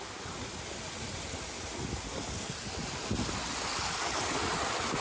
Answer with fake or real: real